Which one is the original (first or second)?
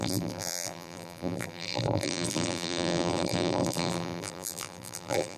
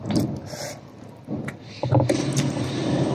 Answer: second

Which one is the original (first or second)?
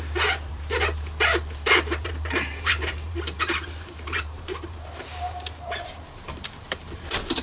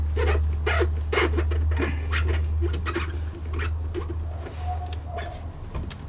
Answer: second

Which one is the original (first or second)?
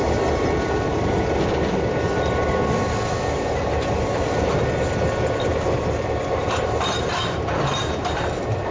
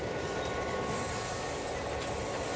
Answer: first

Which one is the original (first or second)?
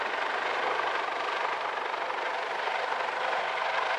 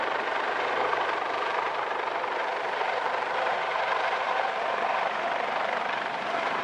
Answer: first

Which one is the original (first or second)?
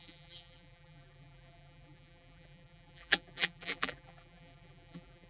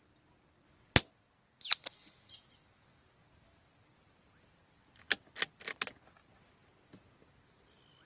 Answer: second